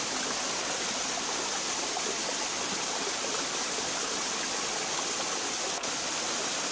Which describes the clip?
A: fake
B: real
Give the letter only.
B